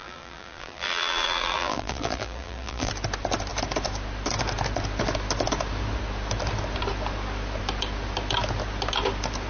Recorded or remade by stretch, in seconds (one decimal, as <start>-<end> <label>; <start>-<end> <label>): 0.0-2.9 remade; 2.9-9.5 recorded